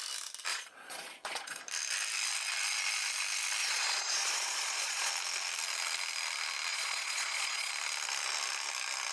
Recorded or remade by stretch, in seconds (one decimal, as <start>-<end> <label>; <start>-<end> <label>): 0.0-0.5 recorded; 0.5-1.6 remade; 1.6-3.6 recorded; 3.6-5.1 remade; 5.1-6.7 recorded; 6.7-7.7 remade; 7.7-9.1 recorded